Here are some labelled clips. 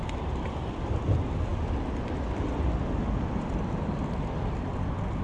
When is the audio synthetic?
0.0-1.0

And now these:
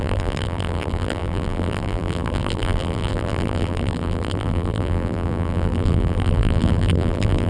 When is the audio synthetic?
0.0-7.5

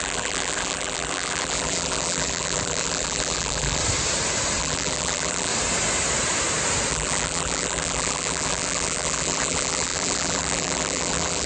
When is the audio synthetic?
0.0-3.8; 4.6-5.5; 6.9-11.5